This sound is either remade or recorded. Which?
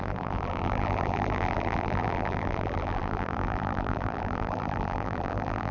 remade